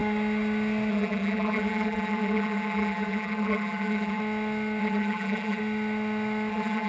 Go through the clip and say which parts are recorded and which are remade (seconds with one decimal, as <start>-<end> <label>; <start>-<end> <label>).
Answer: 0.0-0.9 recorded; 0.9-4.2 remade; 4.2-4.8 recorded; 4.8-5.6 remade; 5.6-6.5 recorded; 6.5-6.9 remade